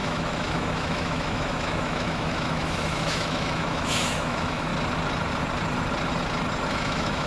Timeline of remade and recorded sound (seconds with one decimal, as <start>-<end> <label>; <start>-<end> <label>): 0.0-4.7 remade; 4.7-6.7 recorded; 6.7-7.3 remade